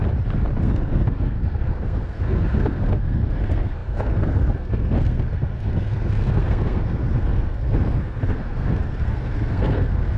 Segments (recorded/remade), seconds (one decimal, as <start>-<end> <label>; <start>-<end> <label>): 0.0-0.6 recorded; 0.6-10.2 remade